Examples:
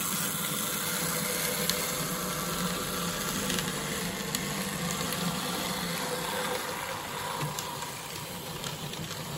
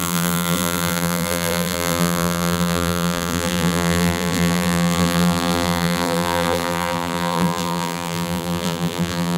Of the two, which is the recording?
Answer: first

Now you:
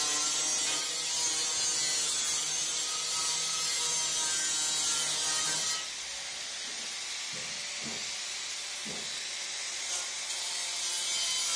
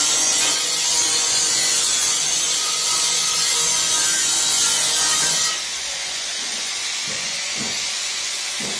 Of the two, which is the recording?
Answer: first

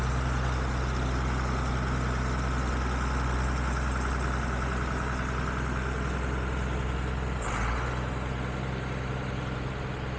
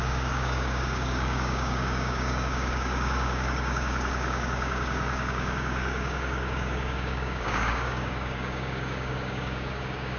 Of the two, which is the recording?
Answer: first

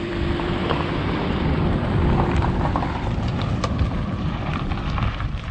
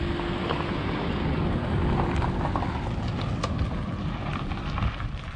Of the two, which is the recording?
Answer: second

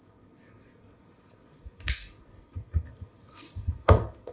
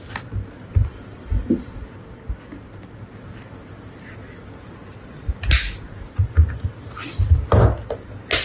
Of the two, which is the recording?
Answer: second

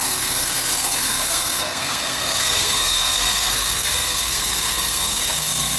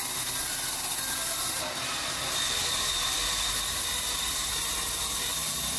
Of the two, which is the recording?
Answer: second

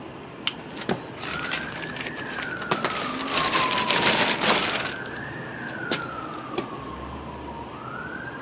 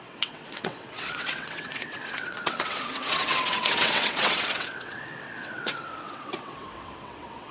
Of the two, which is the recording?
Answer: first